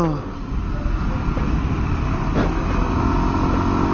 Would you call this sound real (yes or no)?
yes